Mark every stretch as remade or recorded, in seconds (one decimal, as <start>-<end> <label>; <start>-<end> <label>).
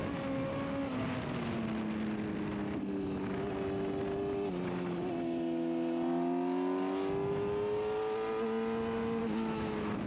0.0-9.2 recorded; 9.2-10.1 remade